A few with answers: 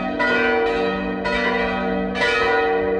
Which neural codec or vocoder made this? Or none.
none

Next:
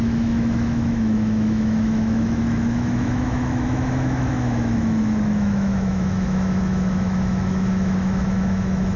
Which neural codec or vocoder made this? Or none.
autoencoder, DAC-VAE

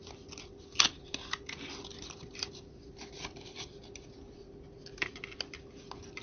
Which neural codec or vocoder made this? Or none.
none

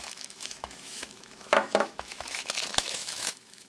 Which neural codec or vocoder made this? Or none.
autoencoder, DAC-VAE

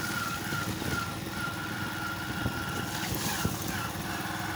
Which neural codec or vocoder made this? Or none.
none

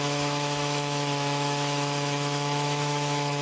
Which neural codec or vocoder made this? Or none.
autoencoder, DAC-VAE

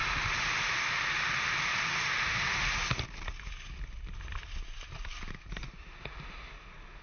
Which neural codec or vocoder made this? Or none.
none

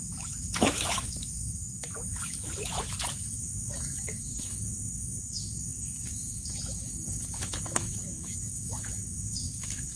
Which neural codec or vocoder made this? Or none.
autoencoder, DAC-VAE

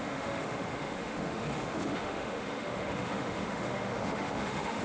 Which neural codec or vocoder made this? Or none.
autoencoder, DAC-VAE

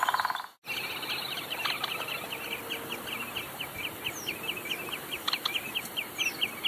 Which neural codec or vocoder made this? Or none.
none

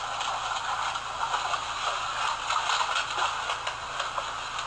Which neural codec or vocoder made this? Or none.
none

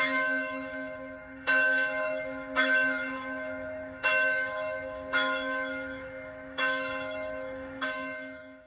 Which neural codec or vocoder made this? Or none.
autoencoder, DAC-VAE